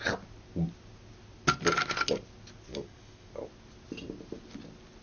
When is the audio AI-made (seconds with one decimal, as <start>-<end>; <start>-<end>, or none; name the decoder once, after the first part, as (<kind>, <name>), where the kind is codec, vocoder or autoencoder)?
2.7-3.3 (codec, DAC)